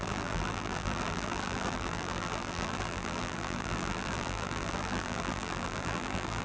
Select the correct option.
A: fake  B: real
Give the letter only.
A